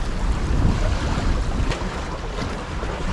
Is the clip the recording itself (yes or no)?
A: yes